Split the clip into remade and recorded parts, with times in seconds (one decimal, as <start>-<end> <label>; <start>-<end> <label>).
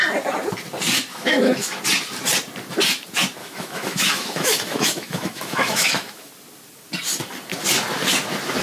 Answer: 0.0-1.1 recorded; 1.1-1.8 remade; 1.8-3.4 recorded; 3.4-6.3 remade; 6.3-8.6 recorded